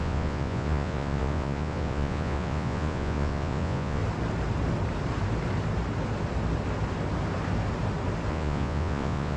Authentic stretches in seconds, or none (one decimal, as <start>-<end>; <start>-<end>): 4.0-8.3